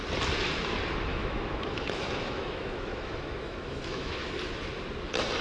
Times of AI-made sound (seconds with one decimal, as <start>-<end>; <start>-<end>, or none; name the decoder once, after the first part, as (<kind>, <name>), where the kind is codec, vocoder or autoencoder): 1.1-4.3 (autoencoder, DAC-VAE)